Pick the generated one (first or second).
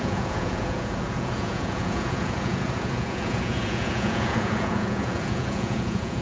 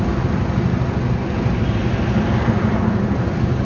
first